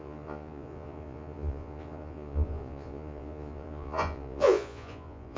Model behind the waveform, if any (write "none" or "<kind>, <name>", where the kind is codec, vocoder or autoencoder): vocoder, Vocos